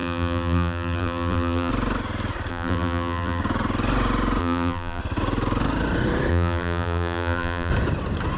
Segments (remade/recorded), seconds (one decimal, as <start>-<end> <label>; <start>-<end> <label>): 0.0-1.7 remade; 1.7-2.5 recorded; 2.5-3.4 remade; 3.4-4.4 recorded; 4.4-5.0 remade; 5.0-6.3 recorded; 6.3-7.7 remade; 7.7-8.4 recorded